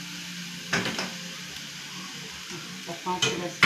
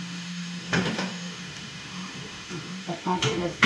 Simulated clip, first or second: second